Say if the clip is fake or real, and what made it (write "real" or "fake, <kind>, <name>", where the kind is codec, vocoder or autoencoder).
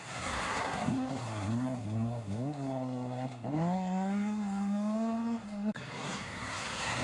fake, codec, SNAC